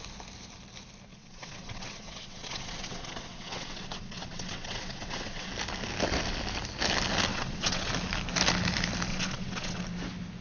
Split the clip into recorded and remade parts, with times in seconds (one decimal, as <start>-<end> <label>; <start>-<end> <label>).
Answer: 0.0-1.1 recorded; 1.1-5.5 remade; 5.5-7.3 recorded; 7.3-7.9 remade; 7.9-9.1 recorded; 9.1-9.8 remade; 9.8-10.4 recorded